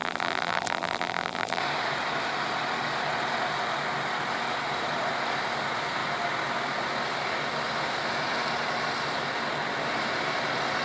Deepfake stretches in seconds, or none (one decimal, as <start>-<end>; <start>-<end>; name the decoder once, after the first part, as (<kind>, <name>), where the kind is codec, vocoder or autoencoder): 0.0-1.6 (vocoder, BigVGAN v2)